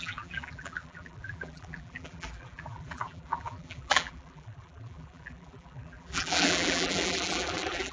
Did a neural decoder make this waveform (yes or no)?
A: yes